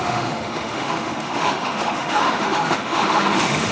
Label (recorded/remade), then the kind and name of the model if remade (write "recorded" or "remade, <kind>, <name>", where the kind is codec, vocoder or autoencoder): remade, autoencoder, DAC-VAE